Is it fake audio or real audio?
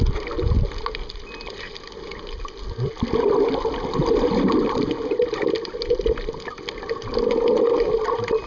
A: real